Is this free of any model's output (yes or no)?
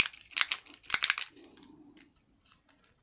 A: yes